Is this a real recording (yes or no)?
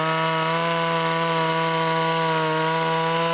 yes